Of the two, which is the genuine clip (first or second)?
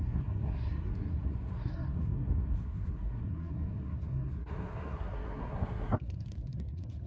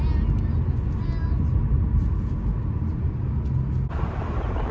second